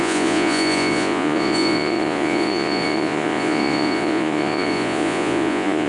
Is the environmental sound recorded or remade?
remade